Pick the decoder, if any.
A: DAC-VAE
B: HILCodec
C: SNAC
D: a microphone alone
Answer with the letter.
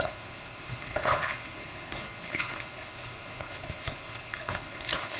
B